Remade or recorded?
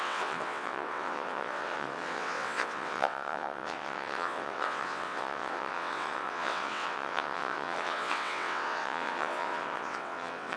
remade